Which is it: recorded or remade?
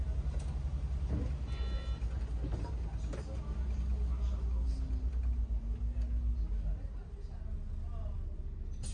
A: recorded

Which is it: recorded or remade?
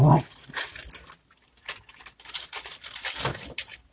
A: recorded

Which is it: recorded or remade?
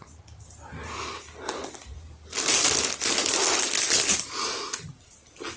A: recorded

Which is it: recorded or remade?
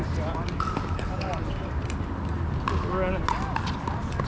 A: recorded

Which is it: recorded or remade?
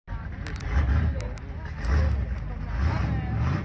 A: recorded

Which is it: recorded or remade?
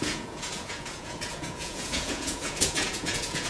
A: remade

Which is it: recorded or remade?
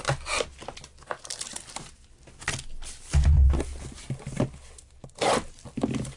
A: recorded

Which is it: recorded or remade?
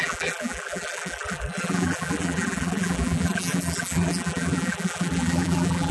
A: remade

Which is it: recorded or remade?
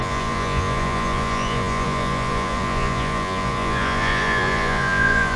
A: remade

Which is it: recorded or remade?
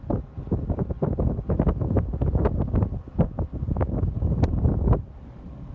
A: recorded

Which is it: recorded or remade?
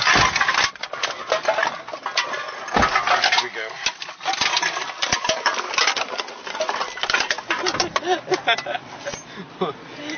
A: recorded